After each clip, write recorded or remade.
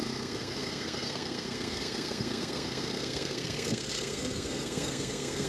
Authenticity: remade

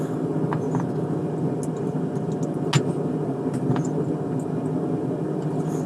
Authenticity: recorded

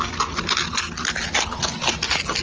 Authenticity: recorded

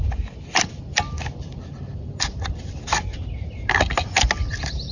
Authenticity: recorded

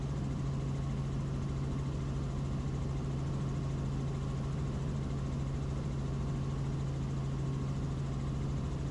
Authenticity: recorded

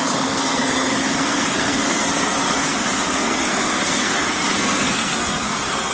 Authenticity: remade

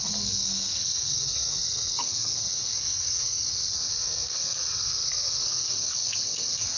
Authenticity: remade